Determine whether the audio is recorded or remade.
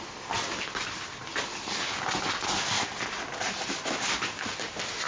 recorded